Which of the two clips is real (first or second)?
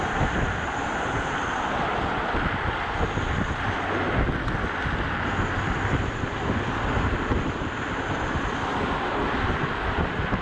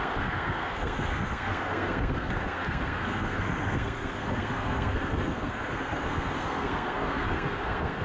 first